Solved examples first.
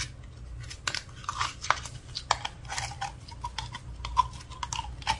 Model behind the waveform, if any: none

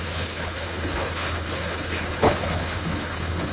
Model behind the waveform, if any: codec, HILCodec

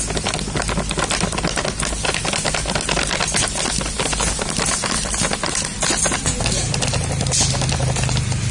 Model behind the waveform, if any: none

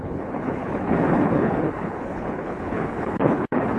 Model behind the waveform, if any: codec, HILCodec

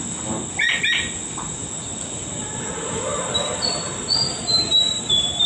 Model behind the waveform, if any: none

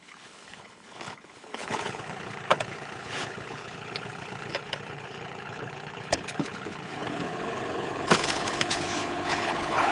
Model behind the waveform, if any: codec, HILCodec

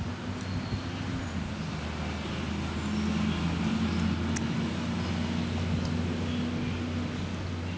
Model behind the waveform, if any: none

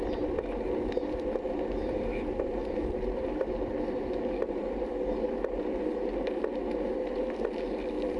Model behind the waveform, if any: none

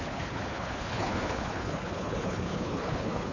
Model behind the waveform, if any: codec, HILCodec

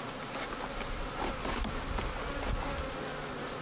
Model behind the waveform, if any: none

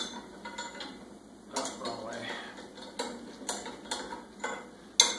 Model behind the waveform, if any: none